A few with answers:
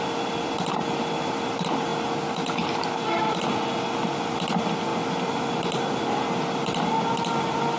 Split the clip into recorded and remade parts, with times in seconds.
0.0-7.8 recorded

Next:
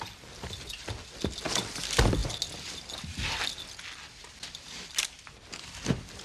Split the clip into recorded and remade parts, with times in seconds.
0.0-6.2 recorded

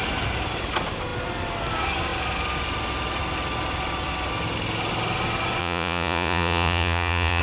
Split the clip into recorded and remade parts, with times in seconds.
0.0-5.6 recorded; 5.6-7.4 remade

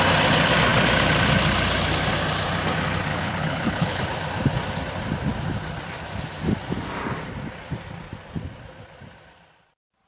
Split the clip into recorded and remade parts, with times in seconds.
0.0-3.1 recorded; 3.1-4.0 remade; 4.0-10.1 recorded

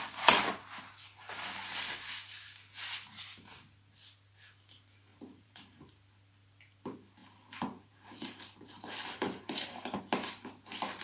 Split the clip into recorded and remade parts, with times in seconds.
0.0-5.1 recorded; 5.1-5.8 remade; 5.8-7.2 recorded; 7.2-10.0 remade; 10.0-11.0 recorded